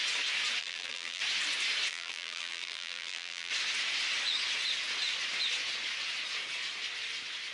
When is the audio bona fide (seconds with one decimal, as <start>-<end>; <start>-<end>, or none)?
0.0-0.6; 1.2-1.9; 3.5-7.5